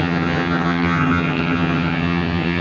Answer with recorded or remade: remade